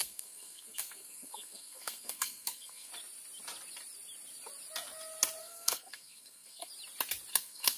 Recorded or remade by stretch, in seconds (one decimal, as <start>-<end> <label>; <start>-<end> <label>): 0.0-2.9 remade; 2.9-5.4 recorded; 5.4-6.7 remade; 6.7-7.3 recorded; 7.3-7.8 remade